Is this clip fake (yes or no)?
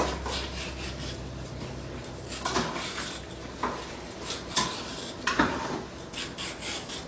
no